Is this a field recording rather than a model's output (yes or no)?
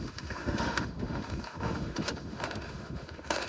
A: no